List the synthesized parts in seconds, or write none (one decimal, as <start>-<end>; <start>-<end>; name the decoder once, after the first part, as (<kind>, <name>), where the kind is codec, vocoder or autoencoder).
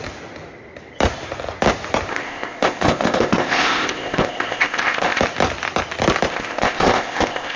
2.1-5.2 (codec, ZipCodec); 6.3-7.6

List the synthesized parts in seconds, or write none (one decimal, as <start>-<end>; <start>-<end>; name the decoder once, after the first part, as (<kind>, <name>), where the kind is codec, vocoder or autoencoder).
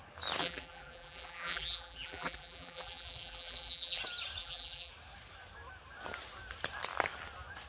0.4-4.0 (vocoder, BigVGAN v2); 4.4-4.9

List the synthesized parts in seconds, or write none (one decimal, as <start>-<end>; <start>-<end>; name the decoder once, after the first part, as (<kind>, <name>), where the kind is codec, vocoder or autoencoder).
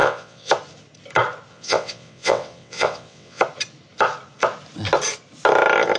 0.0-0.5 (vocoder, WaveNeXt); 1.5-3.4